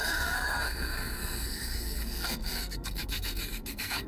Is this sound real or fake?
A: fake